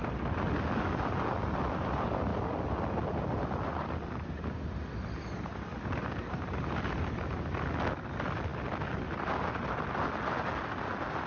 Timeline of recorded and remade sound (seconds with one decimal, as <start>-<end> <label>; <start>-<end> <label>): 0.0-11.3 recorded